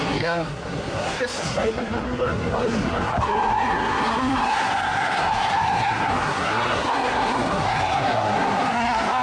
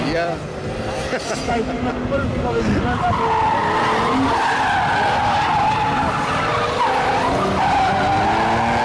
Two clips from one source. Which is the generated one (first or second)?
first